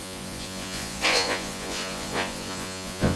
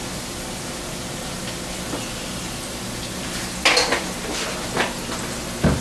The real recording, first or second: second